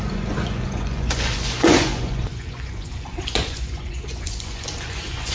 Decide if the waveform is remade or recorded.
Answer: remade